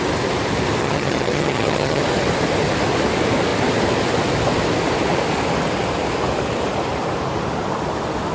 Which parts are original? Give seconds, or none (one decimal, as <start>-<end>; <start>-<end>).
0.0-0.8; 2.0-8.3